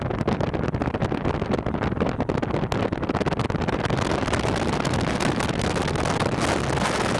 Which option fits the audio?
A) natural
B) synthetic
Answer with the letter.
A